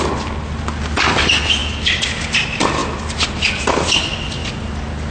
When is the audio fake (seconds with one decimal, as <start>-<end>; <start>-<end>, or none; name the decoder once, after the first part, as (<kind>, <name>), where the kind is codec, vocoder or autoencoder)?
none